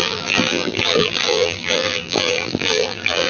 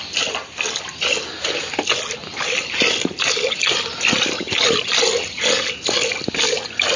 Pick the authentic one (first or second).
second